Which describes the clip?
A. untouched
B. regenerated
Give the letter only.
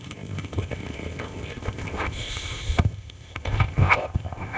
B